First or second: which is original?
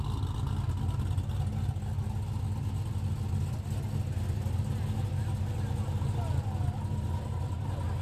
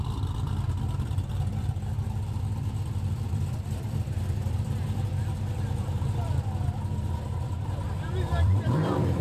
first